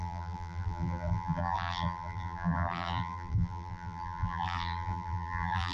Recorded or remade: remade